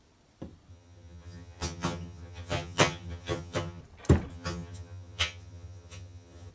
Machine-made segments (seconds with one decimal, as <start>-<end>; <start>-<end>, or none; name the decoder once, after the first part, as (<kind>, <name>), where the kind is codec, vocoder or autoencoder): 0.7-3.8 (vocoder, HiFi-GAN); 4.3-6.5